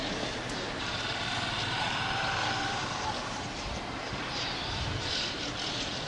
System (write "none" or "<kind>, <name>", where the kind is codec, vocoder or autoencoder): vocoder, BigVGAN v2